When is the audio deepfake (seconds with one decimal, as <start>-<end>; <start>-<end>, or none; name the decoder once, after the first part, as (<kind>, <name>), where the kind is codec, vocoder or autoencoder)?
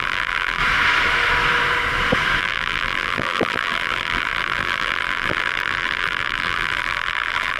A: 0.0-0.6 (vocoder, BigVGAN v2); 2.4-7.6